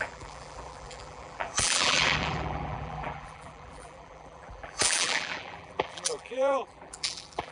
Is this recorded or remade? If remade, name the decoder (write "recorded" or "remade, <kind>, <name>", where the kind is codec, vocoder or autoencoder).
remade, vocoder, BigVGAN v2